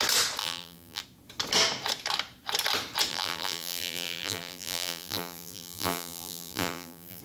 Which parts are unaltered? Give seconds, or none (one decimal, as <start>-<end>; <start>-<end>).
0.0-0.4; 1.0-3.1